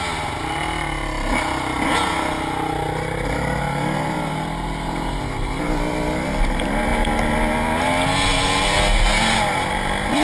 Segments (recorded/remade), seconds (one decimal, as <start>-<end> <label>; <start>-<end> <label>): 0.0-10.2 recorded